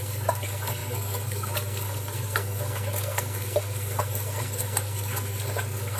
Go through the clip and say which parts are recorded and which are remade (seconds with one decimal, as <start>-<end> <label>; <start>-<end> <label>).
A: 0.0-6.0 remade